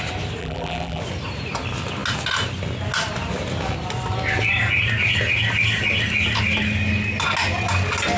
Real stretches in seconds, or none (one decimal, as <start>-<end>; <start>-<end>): 0.0-0.4; 1.0-8.2